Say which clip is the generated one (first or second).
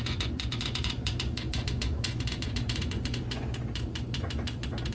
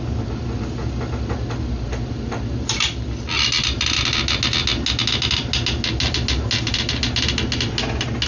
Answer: first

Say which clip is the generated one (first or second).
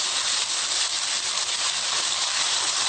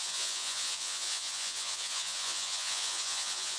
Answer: second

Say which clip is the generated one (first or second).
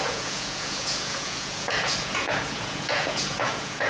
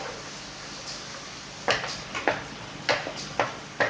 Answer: first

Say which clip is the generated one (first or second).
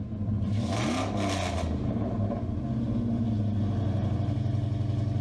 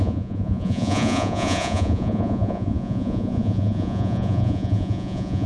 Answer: second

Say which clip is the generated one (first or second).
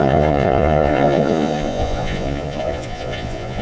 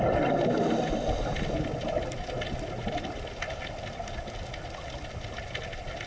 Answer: first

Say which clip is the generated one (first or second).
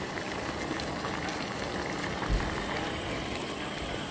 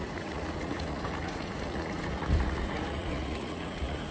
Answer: second